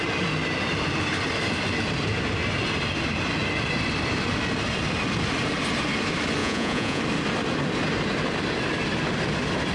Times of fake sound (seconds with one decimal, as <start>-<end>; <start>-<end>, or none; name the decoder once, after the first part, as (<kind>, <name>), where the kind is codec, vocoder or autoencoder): 6.4-7.0 (vocoder, Vocos)